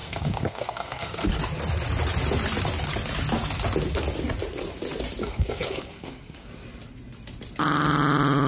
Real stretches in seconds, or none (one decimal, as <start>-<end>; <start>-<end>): 1.3-5.2; 6.5-8.5